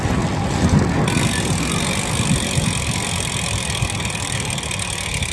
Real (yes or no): yes